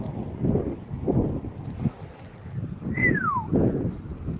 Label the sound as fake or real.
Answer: real